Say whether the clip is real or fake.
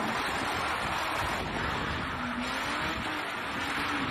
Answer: real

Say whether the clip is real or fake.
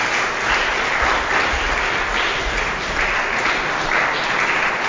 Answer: real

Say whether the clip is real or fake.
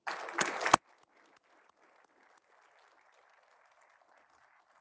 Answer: real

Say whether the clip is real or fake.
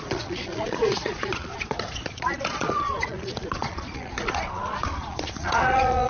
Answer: fake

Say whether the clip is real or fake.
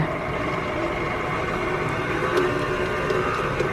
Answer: real